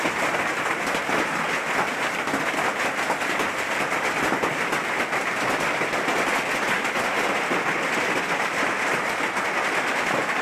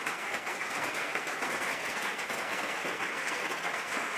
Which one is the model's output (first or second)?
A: second